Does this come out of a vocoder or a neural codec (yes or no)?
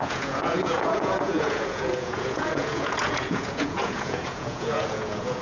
yes